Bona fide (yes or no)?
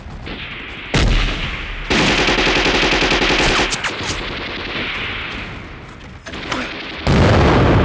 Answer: yes